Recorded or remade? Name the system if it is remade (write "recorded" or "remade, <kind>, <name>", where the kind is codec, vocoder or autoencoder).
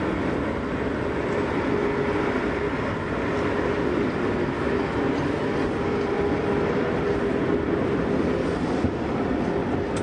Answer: recorded